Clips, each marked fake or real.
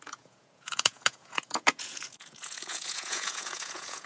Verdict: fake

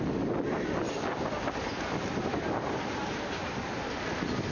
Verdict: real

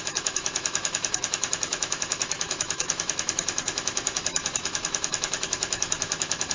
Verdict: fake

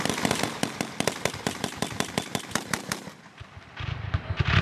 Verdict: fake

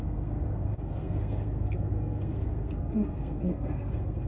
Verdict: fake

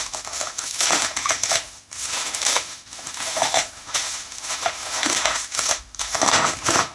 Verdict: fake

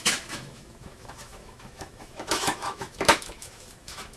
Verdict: fake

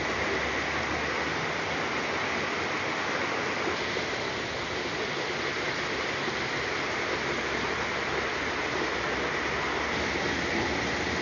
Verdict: real